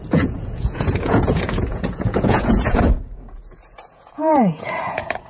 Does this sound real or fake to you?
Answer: fake